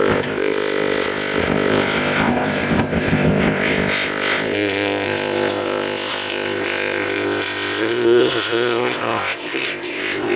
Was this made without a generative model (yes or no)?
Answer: no